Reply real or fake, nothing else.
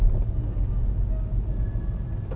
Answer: real